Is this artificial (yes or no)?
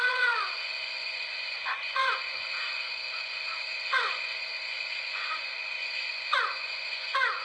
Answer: yes